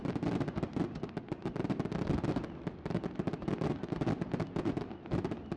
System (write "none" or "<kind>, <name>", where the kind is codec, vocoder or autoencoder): none